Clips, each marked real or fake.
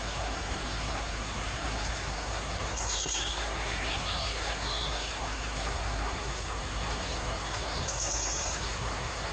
fake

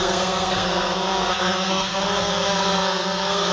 fake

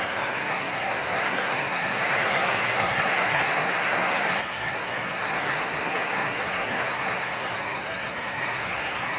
fake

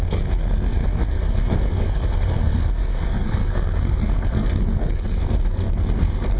fake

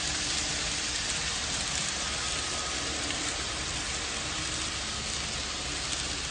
real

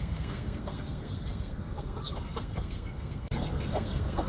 fake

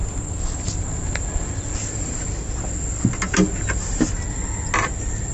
real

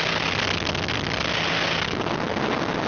real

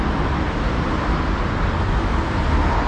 real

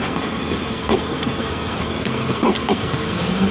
fake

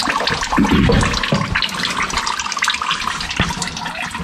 real